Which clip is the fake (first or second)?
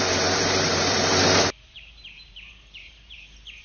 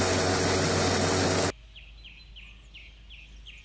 first